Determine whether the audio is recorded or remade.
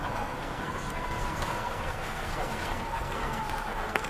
remade